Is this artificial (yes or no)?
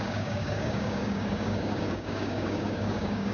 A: yes